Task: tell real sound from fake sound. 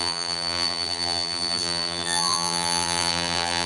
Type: fake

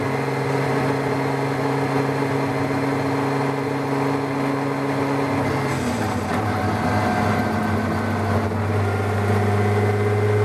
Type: real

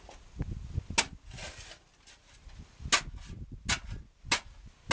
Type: real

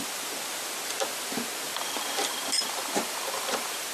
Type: fake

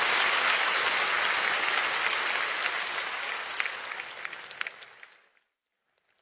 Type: real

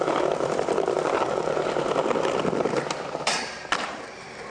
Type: fake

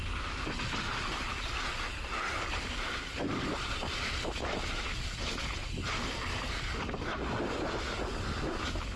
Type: real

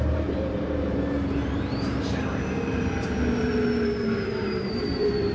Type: fake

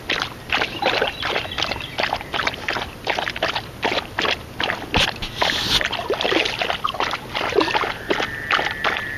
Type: real